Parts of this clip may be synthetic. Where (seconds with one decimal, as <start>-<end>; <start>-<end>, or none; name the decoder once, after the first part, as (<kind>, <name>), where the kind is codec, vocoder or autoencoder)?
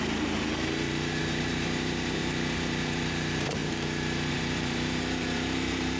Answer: 0.0-6.0 (vocoder, BigVGAN v2)